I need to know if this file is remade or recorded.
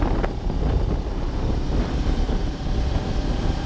recorded